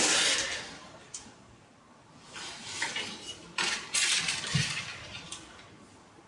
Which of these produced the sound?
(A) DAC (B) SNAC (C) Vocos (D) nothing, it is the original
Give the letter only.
D